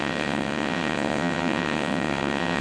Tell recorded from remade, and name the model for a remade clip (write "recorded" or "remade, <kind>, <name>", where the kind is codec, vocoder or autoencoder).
remade, vocoder, WaveNeXt